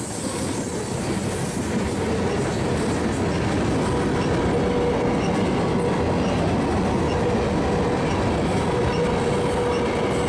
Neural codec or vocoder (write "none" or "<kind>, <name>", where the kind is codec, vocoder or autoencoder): none